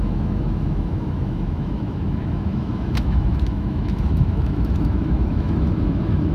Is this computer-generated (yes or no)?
yes